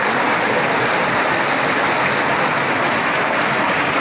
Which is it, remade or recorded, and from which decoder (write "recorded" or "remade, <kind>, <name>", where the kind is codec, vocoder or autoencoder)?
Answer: recorded